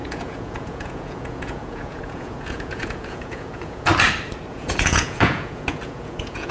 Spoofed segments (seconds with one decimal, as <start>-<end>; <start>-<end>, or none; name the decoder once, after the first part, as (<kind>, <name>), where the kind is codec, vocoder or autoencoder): 0.0-3.9 (vocoder, Vocos); 4.5-6.5

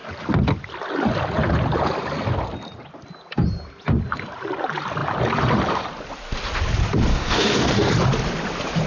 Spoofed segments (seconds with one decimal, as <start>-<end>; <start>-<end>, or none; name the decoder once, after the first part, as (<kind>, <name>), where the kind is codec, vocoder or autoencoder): 7.1-7.9 (codec, DAC)

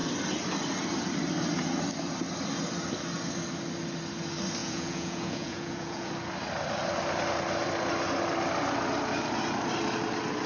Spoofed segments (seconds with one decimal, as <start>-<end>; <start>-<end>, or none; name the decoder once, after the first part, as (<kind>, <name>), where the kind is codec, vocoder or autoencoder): 4.6-6.1 (vocoder, Vocos)

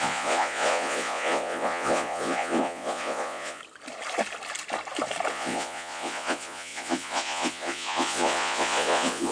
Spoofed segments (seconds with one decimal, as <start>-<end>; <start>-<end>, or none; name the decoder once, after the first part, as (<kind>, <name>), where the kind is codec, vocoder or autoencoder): 0.0-3.6 (vocoder, Vocos); 5.3-9.3